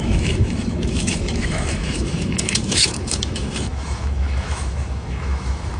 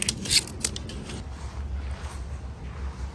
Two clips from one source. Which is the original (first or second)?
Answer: second